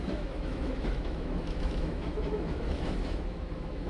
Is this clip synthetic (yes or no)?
yes